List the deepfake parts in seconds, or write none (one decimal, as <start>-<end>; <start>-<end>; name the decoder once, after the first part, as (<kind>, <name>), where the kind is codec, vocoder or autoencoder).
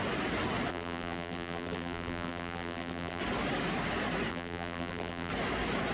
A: 0.7-3.2 (vocoder, BigVGAN v2); 4.3-5.3